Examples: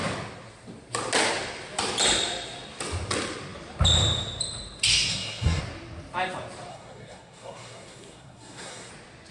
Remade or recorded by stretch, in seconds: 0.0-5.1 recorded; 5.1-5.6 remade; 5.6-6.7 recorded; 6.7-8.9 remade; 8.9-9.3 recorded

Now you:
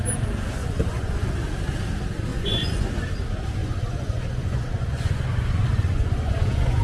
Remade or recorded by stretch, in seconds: 0.0-0.6 recorded; 0.6-1.3 remade; 1.3-2.3 recorded; 2.3-2.9 remade; 2.9-3.6 recorded; 3.6-6.8 remade

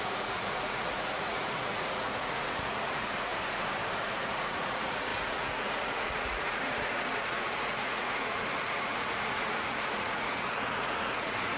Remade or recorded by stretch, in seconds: 0.0-3.3 remade; 3.3-4.1 recorded; 4.1-11.6 remade

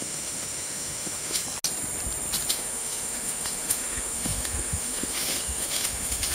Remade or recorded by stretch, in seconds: 0.0-1.4 remade; 1.4-2.5 recorded; 2.5-6.3 remade

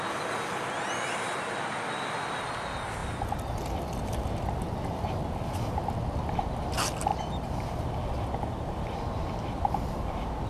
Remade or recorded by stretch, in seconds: 0.0-7.1 recorded; 7.1-7.8 remade; 7.8-10.5 recorded

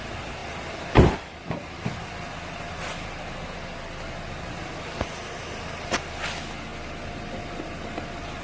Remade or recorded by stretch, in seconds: 0.0-8.4 recorded

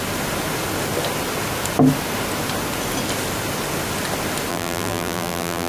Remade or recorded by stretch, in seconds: 0.0-4.5 recorded; 4.5-5.7 remade

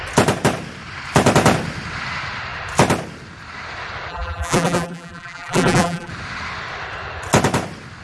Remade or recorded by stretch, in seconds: 0.0-4.1 recorded; 4.1-6.1 remade; 6.1-8.0 recorded